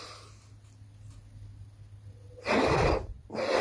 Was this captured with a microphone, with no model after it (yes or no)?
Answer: yes